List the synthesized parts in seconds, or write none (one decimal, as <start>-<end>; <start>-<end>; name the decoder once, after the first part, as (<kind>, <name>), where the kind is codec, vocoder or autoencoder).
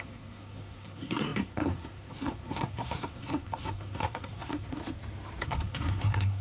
0.0-4.8 (codec, SNAC); 5.4-6.4